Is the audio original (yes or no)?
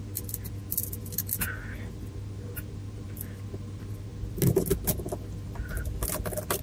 yes